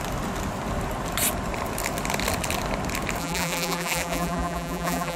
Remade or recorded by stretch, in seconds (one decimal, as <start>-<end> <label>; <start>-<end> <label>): 0.0-3.2 recorded; 3.2-5.2 remade

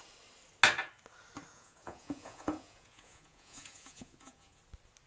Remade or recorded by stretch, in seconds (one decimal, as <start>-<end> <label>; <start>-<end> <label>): 0.0-1.5 recorded; 1.5-4.6 remade; 4.6-5.1 recorded

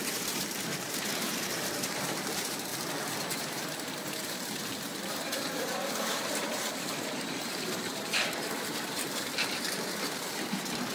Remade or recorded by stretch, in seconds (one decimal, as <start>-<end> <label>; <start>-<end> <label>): 0.0-2.7 remade; 2.7-3.3 recorded; 3.3-10.9 remade

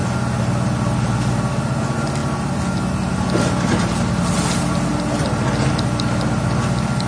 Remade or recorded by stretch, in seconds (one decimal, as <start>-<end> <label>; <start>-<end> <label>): 0.0-7.1 recorded

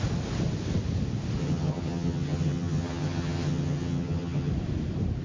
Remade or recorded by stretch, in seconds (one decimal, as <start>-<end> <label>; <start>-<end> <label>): 0.0-1.4 recorded; 1.4-4.5 remade; 4.5-5.2 recorded

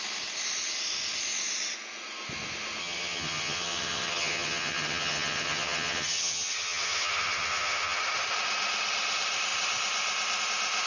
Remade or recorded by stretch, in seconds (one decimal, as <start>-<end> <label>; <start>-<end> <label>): 0.0-2.8 recorded; 2.8-8.0 remade; 8.0-10.9 recorded